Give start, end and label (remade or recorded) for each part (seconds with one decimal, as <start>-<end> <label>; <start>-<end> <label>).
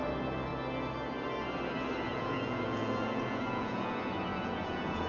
0.0-2.1 recorded; 2.1-3.9 remade; 3.9-4.3 recorded; 4.3-5.1 remade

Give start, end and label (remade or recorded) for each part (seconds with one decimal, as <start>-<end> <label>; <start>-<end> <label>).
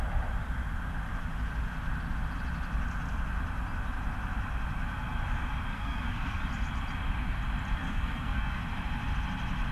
0.0-5.7 recorded; 5.7-6.4 remade; 6.4-7.8 recorded; 7.8-8.6 remade; 8.6-9.7 recorded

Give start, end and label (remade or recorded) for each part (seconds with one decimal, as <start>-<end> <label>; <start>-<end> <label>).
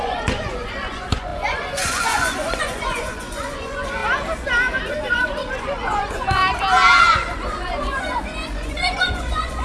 0.0-4.0 remade; 4.0-5.1 recorded; 5.1-6.4 remade; 6.4-7.0 recorded; 7.0-9.6 remade